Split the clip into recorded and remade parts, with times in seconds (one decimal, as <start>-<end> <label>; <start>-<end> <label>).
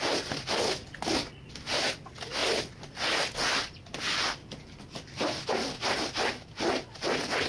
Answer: 0.0-7.5 recorded